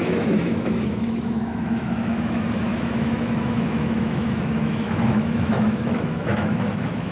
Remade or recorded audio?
remade